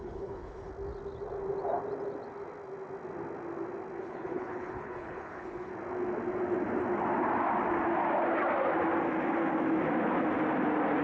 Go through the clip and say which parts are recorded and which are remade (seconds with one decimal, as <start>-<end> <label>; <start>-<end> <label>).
0.0-0.7 remade; 0.7-4.0 recorded; 4.0-5.7 remade; 5.7-11.0 recorded